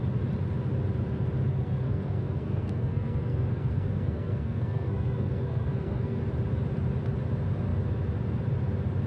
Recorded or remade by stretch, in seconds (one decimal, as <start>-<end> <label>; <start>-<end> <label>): 0.0-1.5 recorded; 1.5-6.2 remade; 6.2-9.1 recorded